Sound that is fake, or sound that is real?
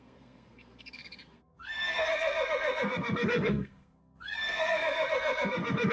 fake